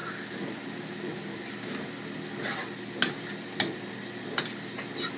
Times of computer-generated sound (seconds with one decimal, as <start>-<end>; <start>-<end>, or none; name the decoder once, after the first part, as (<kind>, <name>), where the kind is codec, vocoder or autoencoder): none